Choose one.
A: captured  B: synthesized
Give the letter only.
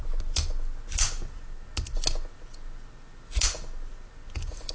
A